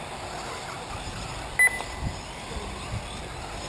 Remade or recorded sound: recorded